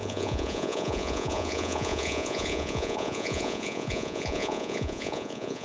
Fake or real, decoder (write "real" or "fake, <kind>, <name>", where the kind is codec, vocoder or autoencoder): fake, vocoder, Vocos